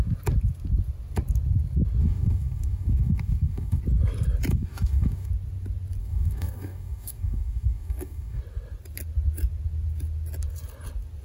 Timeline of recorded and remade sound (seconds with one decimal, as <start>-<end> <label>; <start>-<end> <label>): 0.0-2.0 recorded; 2.0-3.8 remade; 3.8-4.5 recorded; 4.5-5.3 remade; 5.3-6.0 recorded; 6.0-8.4 remade; 8.4-11.2 recorded